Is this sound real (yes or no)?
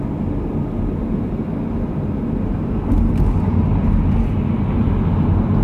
yes